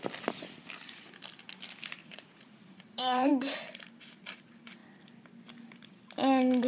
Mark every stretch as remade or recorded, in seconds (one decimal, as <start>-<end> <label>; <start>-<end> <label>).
0.0-2.0 recorded; 2.0-3.3 remade; 3.3-6.7 recorded